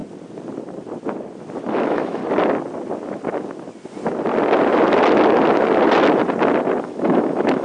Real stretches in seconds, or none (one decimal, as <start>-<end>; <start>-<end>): 0.0-1.7; 2.2-6.8